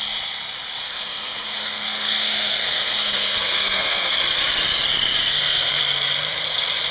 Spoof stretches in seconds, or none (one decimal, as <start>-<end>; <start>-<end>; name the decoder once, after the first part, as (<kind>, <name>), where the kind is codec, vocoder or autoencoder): 0.8-4.1 (codec, SNAC); 5.2-5.8